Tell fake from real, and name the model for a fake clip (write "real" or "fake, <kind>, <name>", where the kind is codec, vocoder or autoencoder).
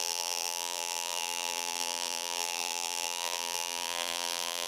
fake, vocoder, BigVGAN v2